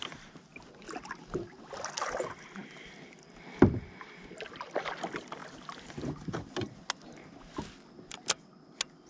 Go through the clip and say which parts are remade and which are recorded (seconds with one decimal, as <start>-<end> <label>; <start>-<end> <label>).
0.0-9.1 recorded